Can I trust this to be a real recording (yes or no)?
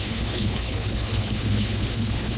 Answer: no